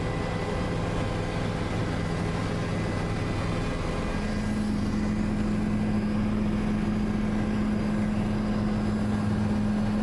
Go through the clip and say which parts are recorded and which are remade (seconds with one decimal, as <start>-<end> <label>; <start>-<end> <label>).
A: 0.0-10.0 recorded